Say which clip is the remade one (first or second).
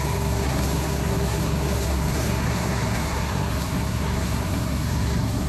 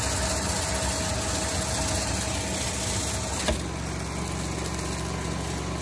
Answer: first